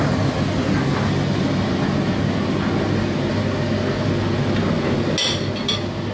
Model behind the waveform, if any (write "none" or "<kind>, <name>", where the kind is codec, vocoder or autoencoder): none